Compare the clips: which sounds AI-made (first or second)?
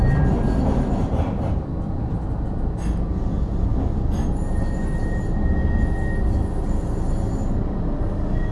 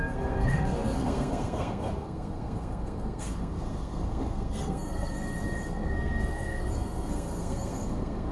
second